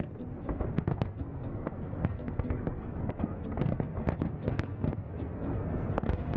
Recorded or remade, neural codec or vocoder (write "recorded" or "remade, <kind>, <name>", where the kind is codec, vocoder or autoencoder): remade, codec, SNAC